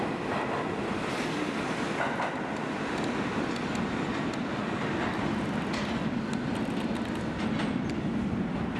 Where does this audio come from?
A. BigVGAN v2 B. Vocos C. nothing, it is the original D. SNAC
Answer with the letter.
C